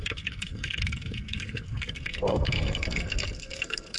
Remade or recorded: remade